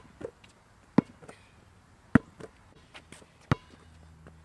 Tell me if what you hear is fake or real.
real